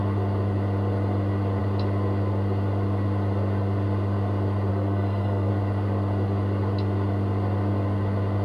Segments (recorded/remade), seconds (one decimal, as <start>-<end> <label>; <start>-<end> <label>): 0.0-4.7 recorded; 4.7-5.5 remade; 5.5-8.4 recorded